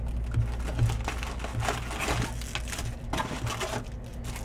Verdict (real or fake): real